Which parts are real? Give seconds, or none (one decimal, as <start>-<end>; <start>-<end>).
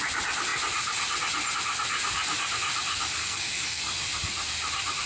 0.0-3.2; 3.8-5.1